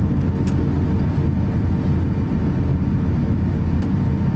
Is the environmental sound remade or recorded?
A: recorded